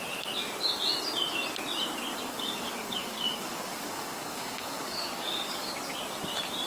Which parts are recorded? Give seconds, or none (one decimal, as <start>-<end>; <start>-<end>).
0.0-2.1; 5.7-6.7